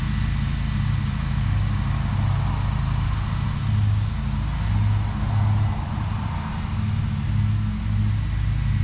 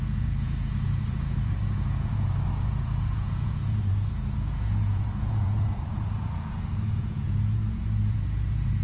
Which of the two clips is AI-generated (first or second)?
second